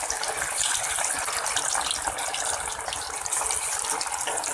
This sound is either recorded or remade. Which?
recorded